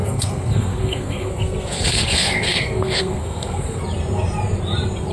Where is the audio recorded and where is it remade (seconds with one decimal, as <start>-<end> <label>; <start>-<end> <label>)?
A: 0.0-3.8 remade; 3.8-5.1 recorded